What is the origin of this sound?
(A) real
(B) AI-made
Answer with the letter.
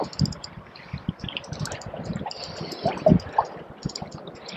A